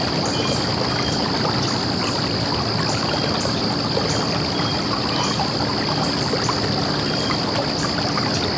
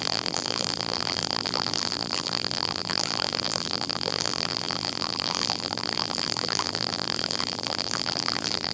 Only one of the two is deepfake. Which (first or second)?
second